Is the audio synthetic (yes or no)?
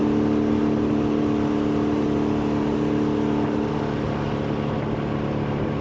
no